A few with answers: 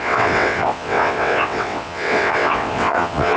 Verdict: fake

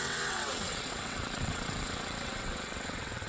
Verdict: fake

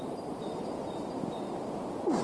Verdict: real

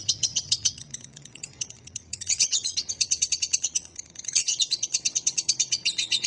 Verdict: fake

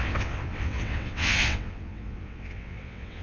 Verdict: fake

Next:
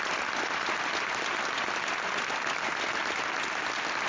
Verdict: real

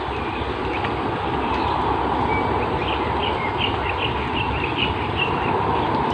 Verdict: real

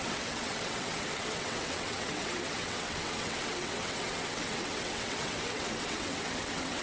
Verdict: fake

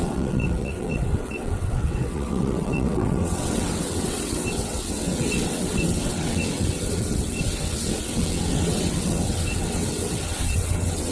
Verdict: fake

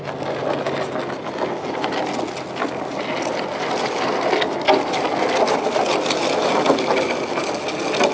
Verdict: real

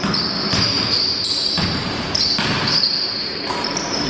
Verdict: real